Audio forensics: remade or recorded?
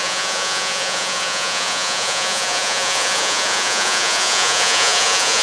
remade